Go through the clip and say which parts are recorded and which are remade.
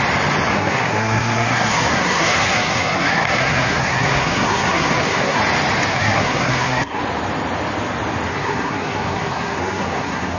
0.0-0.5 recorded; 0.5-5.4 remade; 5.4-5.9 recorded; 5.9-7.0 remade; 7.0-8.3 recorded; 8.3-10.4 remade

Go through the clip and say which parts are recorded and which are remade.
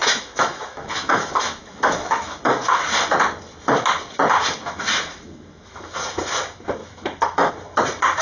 0.0-2.4 remade; 2.4-4.6 recorded; 4.6-6.0 remade; 6.0-6.8 recorded; 6.8-7.5 remade; 7.5-8.2 recorded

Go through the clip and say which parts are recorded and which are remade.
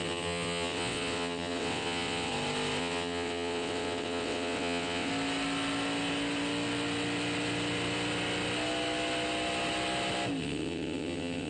0.0-2.3 remade; 2.3-2.8 recorded; 2.8-5.1 remade; 5.1-10.4 recorded; 10.4-11.5 remade